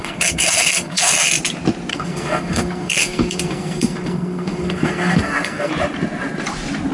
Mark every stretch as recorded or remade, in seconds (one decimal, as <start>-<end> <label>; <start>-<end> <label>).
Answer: 0.0-1.3 remade; 1.3-1.9 recorded; 1.9-5.7 remade; 5.7-6.9 recorded